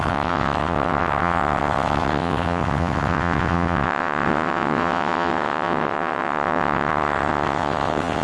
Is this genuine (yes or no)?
no